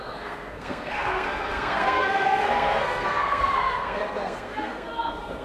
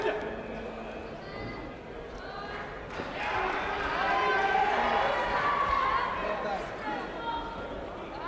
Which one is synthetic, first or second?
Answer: first